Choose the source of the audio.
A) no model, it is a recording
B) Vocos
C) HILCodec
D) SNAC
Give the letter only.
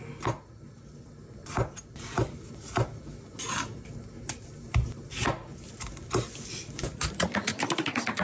A